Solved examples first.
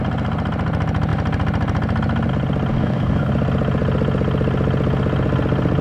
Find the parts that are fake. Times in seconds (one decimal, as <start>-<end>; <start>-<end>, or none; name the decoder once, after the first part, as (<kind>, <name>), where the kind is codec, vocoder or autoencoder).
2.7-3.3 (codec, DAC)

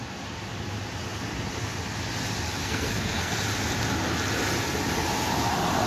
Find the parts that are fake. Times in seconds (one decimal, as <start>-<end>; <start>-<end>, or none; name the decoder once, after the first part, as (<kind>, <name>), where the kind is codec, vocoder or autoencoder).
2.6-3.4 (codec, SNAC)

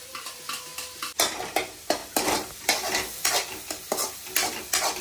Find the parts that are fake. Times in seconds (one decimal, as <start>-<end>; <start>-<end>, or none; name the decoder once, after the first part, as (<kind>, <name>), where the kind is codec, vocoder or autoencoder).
0.0-0.7 (vocoder, BigVGAN v2); 1.4-2.0

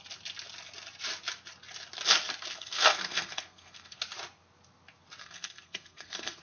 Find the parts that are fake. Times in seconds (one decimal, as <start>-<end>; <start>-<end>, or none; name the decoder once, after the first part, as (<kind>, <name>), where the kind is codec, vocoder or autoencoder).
2.5-4.0 (codec, SNAC); 5.2-6.4

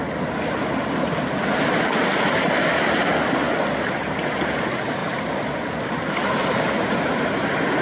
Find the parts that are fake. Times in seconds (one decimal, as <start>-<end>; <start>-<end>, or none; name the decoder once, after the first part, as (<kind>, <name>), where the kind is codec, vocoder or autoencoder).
none

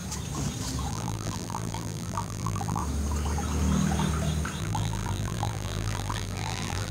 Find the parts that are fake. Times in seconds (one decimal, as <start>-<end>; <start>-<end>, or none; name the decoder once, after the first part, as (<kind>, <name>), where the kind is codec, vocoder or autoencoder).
0.9-2.8 (vocoder, BigVGAN v2); 4.6-6.9

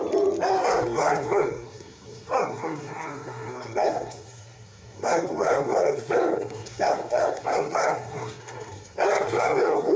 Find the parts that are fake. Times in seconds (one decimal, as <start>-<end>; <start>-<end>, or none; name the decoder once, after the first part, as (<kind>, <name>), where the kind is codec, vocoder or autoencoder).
0.5-10.0 (codec, SNAC)

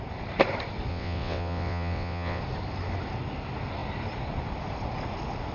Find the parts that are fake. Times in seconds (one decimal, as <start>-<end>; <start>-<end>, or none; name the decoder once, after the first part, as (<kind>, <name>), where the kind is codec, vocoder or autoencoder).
0.9-2.4 (vocoder, WaveNeXt)